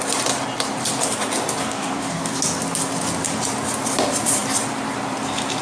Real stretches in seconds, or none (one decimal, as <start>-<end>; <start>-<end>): 0.0-1.6; 2.4-5.6